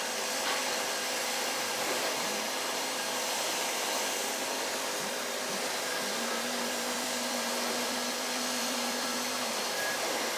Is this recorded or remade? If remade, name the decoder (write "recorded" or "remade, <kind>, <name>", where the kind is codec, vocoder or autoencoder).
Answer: remade, vocoder, BigVGAN v2